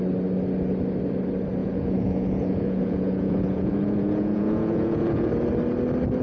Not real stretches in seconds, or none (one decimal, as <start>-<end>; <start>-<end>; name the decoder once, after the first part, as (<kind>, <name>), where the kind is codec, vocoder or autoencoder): 1.6-5.3 (vocoder, Vocos)